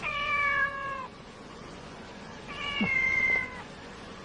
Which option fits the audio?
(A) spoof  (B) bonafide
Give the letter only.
A